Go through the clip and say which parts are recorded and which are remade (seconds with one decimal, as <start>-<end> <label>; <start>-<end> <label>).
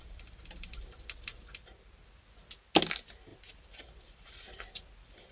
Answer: 0.0-1.3 recorded; 1.3-2.0 remade; 2.0-3.3 recorded; 3.3-5.3 remade